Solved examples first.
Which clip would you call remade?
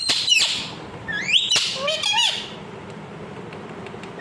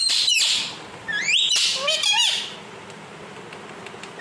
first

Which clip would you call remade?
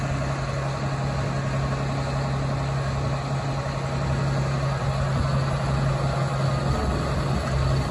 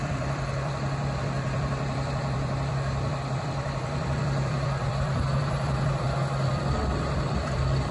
second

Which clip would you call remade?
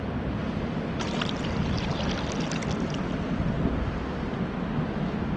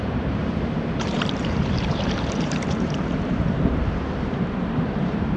second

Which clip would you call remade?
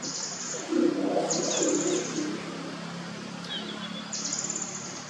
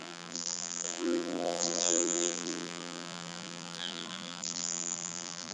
second